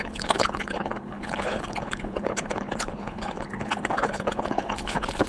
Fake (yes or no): yes